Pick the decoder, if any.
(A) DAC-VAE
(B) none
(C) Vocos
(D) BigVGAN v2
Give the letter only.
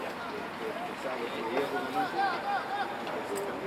B